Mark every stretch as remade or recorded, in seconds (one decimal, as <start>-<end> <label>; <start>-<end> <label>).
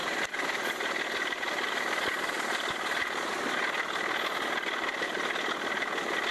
0.0-6.3 recorded